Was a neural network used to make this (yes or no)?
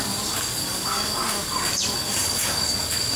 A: yes